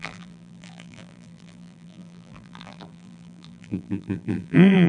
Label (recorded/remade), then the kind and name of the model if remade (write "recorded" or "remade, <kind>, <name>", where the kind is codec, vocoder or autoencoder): remade, vocoder, BigVGAN v2